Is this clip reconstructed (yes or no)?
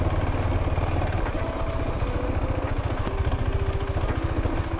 no